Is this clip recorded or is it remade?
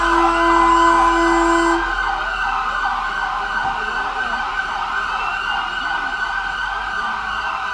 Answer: recorded